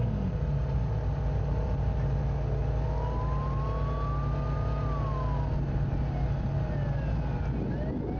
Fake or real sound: real